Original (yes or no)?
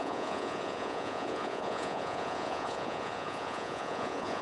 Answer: no